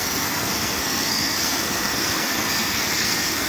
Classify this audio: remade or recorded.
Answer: remade